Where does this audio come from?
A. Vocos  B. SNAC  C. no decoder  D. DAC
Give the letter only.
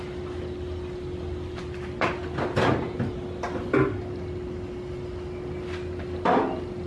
C